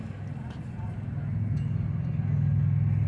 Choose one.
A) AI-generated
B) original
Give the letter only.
B